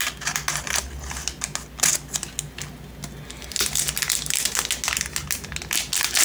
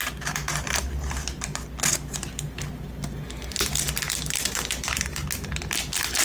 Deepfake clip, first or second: second